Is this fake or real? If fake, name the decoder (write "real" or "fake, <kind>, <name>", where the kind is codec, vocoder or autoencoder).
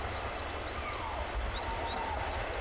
real